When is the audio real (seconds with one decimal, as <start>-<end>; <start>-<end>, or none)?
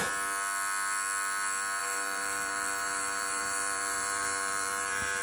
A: 0.0-1.8